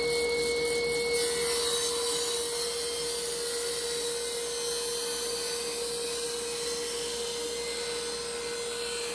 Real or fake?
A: real